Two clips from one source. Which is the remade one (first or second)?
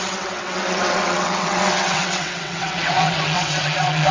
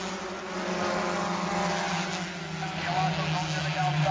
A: first